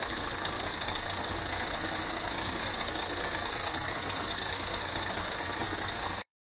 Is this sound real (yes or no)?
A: no